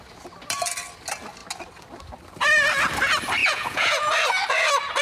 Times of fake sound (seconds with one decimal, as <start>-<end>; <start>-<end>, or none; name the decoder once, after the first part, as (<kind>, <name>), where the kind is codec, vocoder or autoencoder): 3.4-4.1 (vocoder, Vocos)